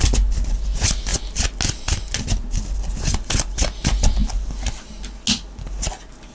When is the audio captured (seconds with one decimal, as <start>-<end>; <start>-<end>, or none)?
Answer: 0.0-6.3